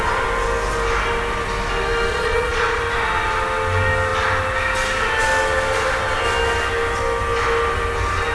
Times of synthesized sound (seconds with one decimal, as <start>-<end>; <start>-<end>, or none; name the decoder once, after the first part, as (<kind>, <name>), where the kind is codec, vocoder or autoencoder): 2.1-2.8 (vocoder, Vocos)